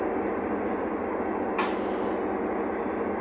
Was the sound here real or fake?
real